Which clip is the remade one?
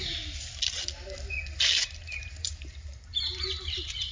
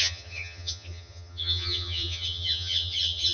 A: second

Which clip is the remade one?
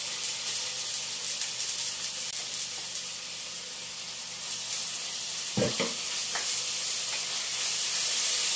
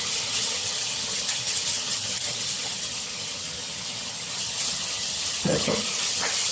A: second